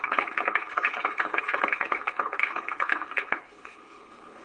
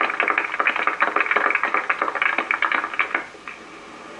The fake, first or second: first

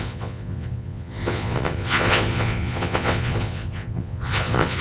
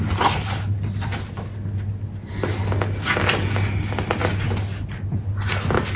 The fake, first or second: first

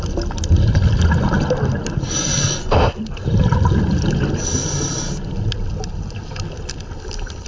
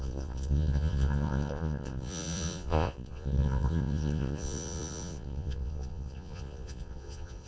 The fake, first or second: second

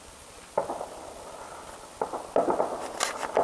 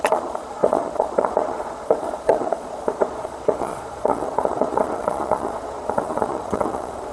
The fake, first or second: second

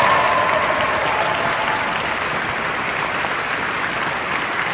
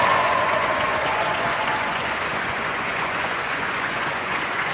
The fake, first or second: second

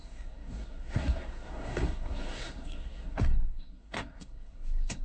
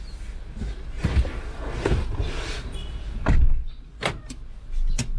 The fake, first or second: first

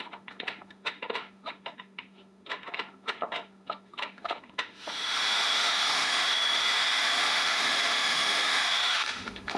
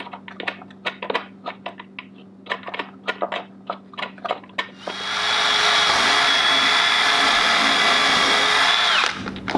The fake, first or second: first